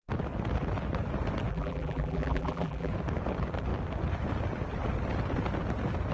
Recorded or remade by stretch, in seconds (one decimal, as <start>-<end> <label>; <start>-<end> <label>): 0.0-1.5 recorded; 1.5-2.9 remade; 2.9-6.1 recorded